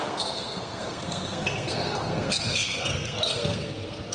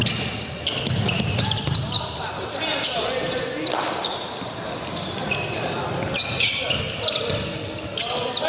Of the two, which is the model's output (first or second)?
first